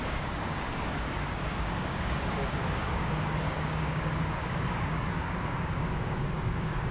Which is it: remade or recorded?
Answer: remade